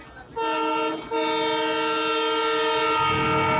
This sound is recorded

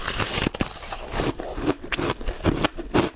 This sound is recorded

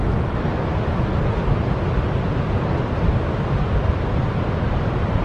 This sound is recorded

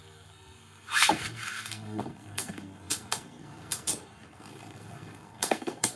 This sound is remade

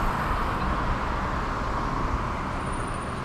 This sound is recorded